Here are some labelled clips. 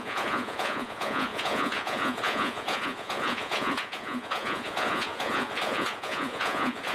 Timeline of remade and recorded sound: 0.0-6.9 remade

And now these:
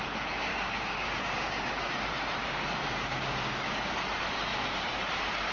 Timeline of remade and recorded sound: 0.0-0.5 recorded; 0.5-1.9 remade; 1.9-2.4 recorded; 2.4-3.9 remade; 3.9-5.5 recorded

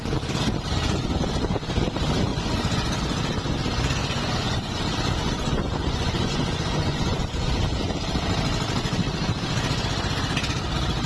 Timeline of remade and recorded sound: 0.0-2.3 recorded; 2.3-3.0 remade; 3.0-4.0 recorded; 4.0-4.8 remade; 4.8-5.2 recorded; 5.2-7.5 remade; 7.5-11.1 recorded

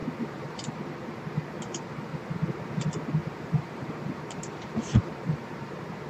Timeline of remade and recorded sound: 0.0-0.8 remade; 0.8-2.1 recorded; 2.1-2.8 remade; 2.8-3.2 recorded; 3.2-6.1 remade

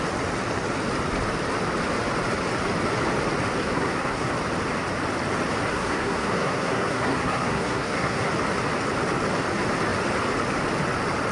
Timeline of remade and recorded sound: 0.0-3.6 recorded; 3.6-4.3 remade; 4.3-5.7 recorded; 5.7-8.3 remade; 8.3-11.3 recorded

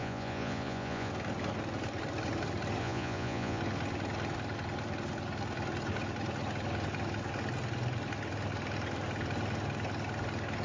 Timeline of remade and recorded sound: 0.0-1.1 remade; 1.1-2.8 recorded; 2.8-3.6 remade; 3.6-10.6 recorded

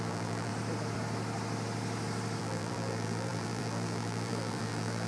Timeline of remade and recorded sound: 0.0-0.5 remade; 0.5-2.4 recorded; 2.4-5.1 remade